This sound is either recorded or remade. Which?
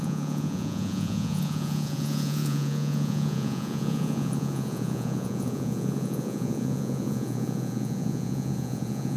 remade